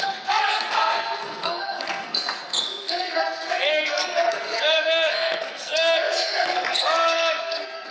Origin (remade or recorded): remade